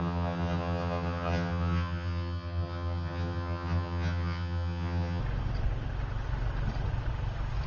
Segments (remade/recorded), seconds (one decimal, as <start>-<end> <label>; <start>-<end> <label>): 0.0-5.2 remade; 5.2-7.7 recorded